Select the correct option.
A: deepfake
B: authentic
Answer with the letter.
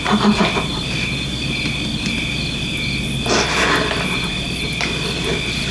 B